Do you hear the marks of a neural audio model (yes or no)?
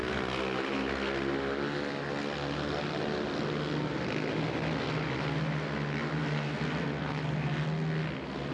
no